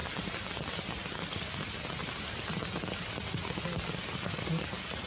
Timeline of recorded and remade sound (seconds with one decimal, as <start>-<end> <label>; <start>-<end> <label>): 0.0-5.1 recorded